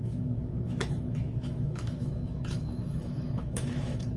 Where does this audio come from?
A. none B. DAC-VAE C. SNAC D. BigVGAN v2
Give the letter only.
B